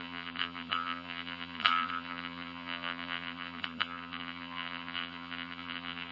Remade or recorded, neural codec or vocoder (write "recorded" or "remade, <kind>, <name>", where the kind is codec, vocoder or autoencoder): remade, vocoder, BigVGAN v2